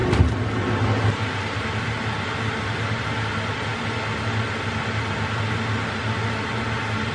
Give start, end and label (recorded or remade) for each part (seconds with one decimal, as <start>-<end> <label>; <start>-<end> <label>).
0.0-7.1 recorded